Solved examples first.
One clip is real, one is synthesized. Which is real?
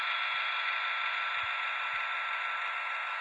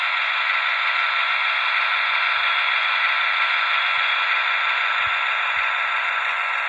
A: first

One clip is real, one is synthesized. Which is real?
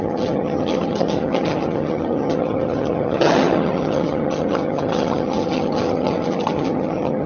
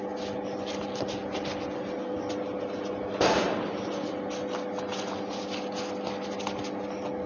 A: second